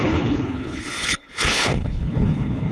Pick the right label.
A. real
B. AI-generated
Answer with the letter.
B